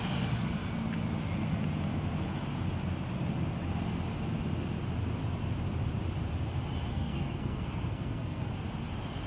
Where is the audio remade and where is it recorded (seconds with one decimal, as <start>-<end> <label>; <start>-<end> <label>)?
0.0-6.9 recorded; 6.9-8.5 remade; 8.5-9.3 recorded